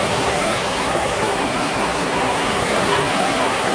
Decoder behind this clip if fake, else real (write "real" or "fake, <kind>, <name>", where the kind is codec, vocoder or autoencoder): fake, codec, SNAC